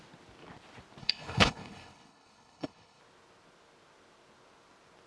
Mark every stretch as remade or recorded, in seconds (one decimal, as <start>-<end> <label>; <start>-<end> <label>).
0.0-1.0 recorded; 1.0-3.0 remade; 3.0-5.1 recorded